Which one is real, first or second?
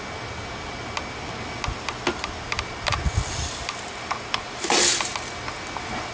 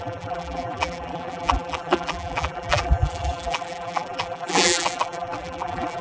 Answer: first